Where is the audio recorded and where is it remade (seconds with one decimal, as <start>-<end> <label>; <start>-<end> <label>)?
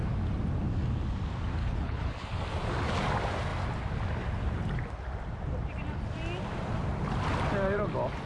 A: 0.0-1.6 recorded; 1.6-2.4 remade; 2.4-8.3 recorded